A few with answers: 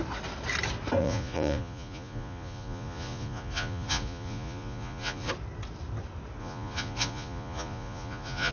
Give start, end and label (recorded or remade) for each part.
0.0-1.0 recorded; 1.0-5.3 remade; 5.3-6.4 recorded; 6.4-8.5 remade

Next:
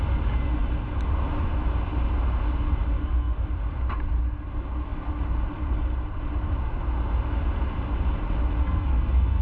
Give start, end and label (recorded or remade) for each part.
0.0-3.0 recorded; 3.0-3.5 remade; 3.5-8.6 recorded; 8.6-9.4 remade

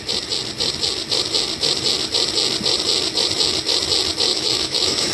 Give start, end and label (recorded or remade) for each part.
0.0-4.3 recorded; 4.3-5.1 remade